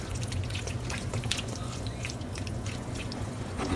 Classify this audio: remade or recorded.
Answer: remade